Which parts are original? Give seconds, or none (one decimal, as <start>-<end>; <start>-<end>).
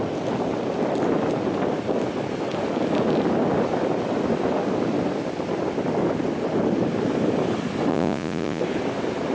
0.0-7.9; 8.6-9.3